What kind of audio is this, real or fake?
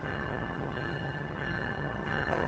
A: fake